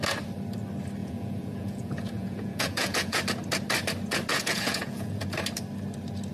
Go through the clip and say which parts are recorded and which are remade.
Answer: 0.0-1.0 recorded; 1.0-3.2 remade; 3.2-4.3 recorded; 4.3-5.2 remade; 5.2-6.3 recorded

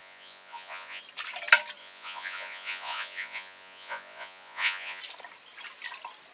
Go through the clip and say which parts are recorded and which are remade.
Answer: 0.0-1.0 remade; 1.0-1.8 recorded; 1.8-5.0 remade; 5.0-6.3 recorded

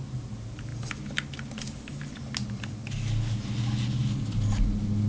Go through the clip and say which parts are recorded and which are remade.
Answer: 0.0-5.1 recorded

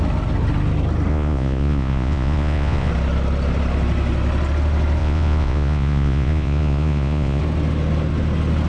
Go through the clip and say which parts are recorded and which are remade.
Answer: 0.0-1.1 recorded; 1.1-2.9 remade; 2.9-5.0 recorded; 5.0-7.4 remade; 7.4-8.7 recorded

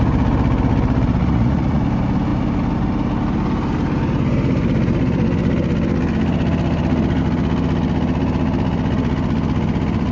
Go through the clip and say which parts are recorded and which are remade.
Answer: 0.0-1.2 recorded; 1.2-1.8 remade; 1.8-10.1 recorded